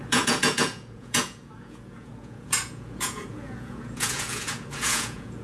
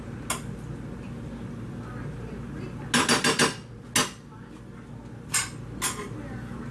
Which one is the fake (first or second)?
first